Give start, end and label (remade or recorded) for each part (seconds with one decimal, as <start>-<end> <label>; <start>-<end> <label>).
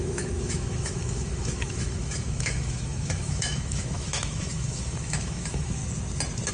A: 0.0-5.8 remade; 5.8-6.5 recorded